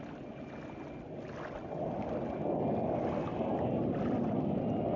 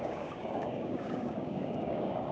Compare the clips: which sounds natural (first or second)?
first